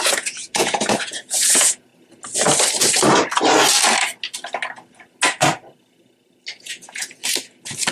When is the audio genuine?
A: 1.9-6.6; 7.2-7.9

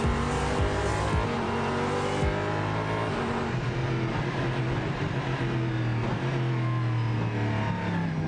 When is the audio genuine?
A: 0.0-8.3

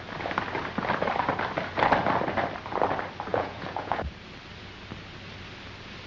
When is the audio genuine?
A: 0.0-3.3; 4.0-6.1